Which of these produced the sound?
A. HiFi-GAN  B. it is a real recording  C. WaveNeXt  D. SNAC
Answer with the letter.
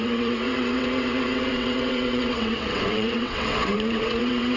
C